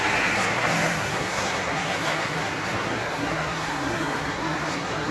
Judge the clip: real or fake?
fake